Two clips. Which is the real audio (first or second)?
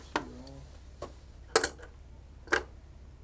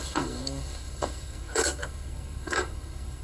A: first